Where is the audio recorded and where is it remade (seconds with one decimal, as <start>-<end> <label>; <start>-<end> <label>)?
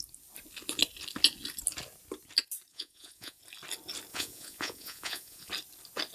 0.0-2.7 recorded; 2.7-3.4 remade; 3.4-4.1 recorded; 4.1-5.5 remade; 5.5-6.1 recorded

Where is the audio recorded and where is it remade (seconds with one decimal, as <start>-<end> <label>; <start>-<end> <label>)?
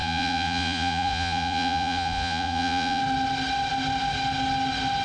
0.0-3.0 remade; 3.0-5.0 recorded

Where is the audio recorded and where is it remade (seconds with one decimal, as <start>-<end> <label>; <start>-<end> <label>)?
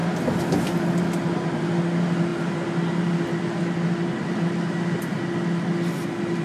0.0-6.4 recorded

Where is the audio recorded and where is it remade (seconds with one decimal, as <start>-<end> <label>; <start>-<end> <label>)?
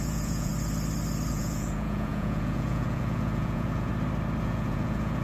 0.0-0.5 remade; 0.5-1.3 recorded; 1.3-3.9 remade; 3.9-4.4 recorded; 4.4-5.2 remade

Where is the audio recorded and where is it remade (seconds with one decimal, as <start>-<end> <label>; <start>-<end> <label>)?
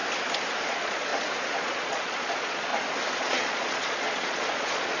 0.0-0.7 recorded; 0.7-1.1 remade; 1.1-1.6 recorded; 1.6-2.7 remade; 2.7-3.2 recorded; 3.2-5.0 remade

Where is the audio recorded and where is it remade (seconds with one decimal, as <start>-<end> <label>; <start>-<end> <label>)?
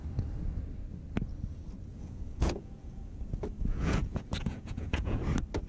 0.0-1.9 recorded; 1.9-3.2 remade; 3.2-3.6 recorded; 3.6-5.2 remade; 5.2-5.7 recorded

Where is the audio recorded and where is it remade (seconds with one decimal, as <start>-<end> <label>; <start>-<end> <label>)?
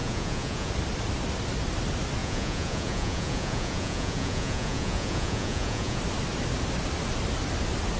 0.0-0.7 remade; 0.7-2.2 recorded; 2.2-6.0 remade; 6.0-8.0 recorded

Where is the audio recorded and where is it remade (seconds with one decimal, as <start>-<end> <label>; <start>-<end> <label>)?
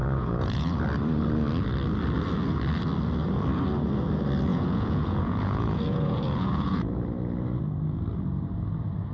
0.0-0.8 remade; 0.8-4.5 recorded; 4.5-6.9 remade; 6.9-9.1 recorded